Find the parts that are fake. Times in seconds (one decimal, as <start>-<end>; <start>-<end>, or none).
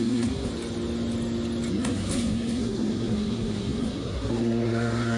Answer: 0.0-0.5; 1.7-5.2